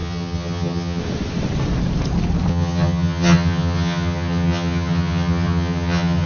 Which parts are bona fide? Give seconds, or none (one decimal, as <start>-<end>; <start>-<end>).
1.0-2.5